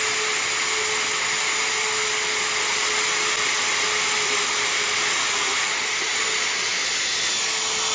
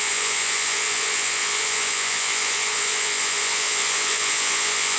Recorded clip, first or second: first